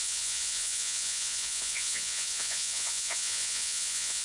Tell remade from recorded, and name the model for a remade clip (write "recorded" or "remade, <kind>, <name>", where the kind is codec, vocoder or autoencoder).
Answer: remade, vocoder, Vocos